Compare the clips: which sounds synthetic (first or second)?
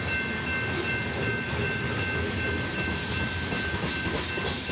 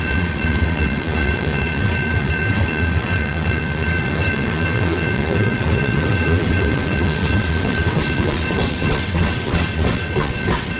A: second